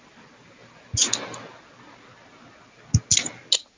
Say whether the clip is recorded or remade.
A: recorded